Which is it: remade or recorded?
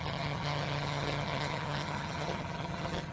remade